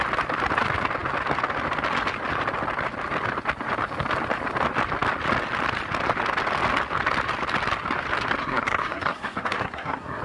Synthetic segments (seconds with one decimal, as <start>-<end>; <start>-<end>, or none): 8.4-10.2